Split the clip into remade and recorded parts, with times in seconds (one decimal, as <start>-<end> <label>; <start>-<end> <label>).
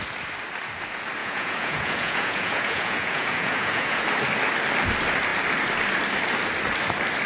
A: 0.0-1.2 recorded; 1.2-4.0 remade; 4.0-7.3 recorded